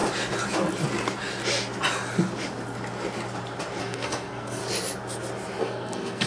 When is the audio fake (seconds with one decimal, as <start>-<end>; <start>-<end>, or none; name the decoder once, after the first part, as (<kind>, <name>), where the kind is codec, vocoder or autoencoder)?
3.8-4.6 (codec, SNAC); 5.6-6.3